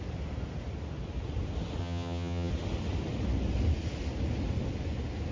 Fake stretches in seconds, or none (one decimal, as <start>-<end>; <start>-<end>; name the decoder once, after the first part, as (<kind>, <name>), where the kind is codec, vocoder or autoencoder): 1.8-2.5 (vocoder, HiFi-GAN)